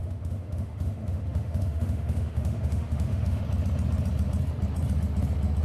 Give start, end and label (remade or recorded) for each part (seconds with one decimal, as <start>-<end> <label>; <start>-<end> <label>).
0.0-3.4 remade; 3.4-5.6 recorded